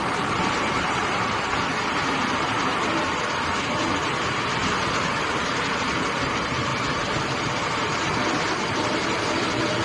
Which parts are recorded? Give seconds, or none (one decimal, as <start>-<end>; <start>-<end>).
none